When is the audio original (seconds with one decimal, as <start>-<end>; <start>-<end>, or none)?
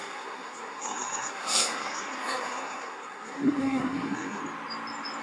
4.4-5.2